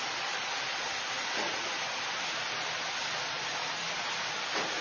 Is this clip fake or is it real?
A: real